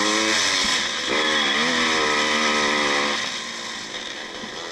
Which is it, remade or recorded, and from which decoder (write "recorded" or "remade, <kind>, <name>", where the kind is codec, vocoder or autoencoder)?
recorded